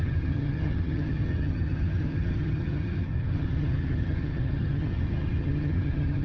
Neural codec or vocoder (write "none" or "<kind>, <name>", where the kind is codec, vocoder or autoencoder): vocoder, HiFi-GAN